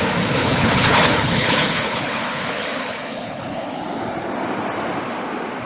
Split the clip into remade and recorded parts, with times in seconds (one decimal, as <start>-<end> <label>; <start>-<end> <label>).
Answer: 0.0-0.4 recorded; 0.4-3.8 remade; 3.8-5.7 recorded